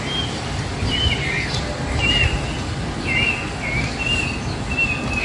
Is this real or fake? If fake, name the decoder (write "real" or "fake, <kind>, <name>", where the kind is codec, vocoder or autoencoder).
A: real